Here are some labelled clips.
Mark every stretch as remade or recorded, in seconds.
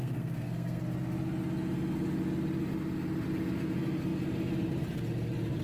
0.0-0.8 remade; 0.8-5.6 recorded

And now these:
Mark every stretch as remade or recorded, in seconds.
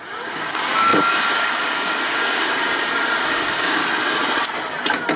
0.0-2.6 remade; 2.6-3.2 recorded; 3.2-3.8 remade; 3.8-5.2 recorded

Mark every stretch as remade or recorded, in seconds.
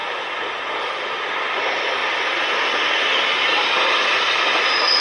0.0-5.0 recorded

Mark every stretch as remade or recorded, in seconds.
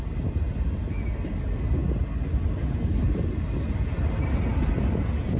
0.0-5.4 recorded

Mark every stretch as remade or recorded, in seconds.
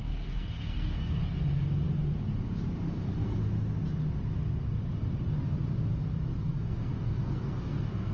0.0-1.2 remade; 1.2-2.9 recorded; 2.9-3.4 remade; 3.4-6.4 recorded; 6.4-8.1 remade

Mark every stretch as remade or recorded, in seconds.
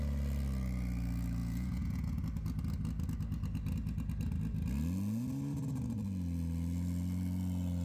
0.0-1.4 recorded; 1.4-2.2 remade; 2.2-7.8 recorded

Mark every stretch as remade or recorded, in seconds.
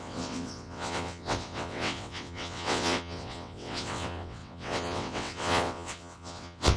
0.0-6.8 remade